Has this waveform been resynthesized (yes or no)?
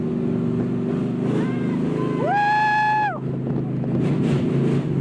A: no